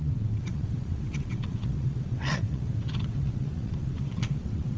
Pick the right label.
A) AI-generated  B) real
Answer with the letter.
A